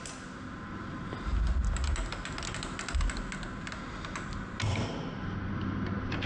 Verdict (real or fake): real